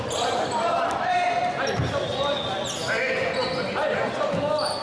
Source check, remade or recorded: recorded